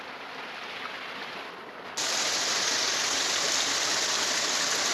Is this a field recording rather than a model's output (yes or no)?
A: yes